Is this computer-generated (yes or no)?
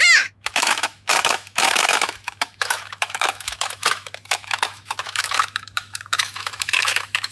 yes